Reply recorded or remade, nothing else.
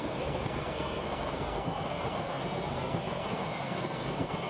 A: remade